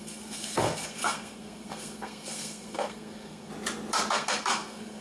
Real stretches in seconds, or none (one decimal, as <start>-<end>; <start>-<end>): 3.5-4.1